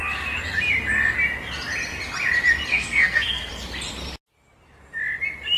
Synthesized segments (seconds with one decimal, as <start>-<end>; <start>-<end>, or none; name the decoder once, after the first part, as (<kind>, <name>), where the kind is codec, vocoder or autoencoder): 2.7-3.5 (codec, SNAC)